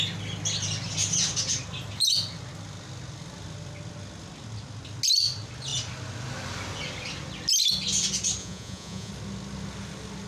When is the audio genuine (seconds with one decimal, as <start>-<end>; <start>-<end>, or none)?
0.0-8.4; 9.1-10.3